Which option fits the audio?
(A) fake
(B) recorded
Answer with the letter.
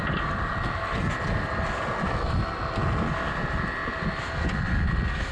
B